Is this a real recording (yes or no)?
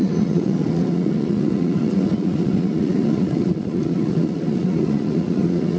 no